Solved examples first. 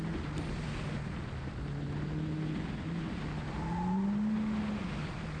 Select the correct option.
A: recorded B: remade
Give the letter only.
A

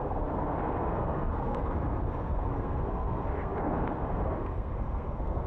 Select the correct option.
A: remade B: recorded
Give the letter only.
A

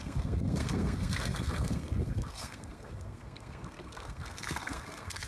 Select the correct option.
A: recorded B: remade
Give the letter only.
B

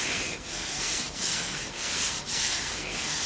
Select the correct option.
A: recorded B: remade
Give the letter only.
B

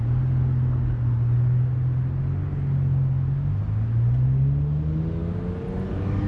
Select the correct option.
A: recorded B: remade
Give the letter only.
A